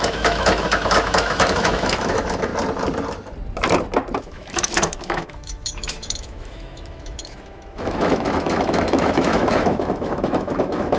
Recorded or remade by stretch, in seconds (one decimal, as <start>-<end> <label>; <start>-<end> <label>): 0.0-2.5 remade; 2.5-4.2 recorded; 4.2-11.0 remade